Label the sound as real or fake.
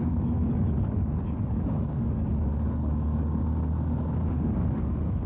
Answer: fake